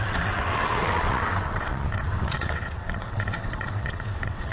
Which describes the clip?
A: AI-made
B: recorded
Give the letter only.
A